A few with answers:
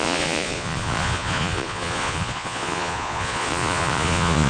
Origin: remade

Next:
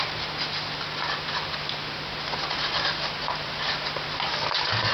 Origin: recorded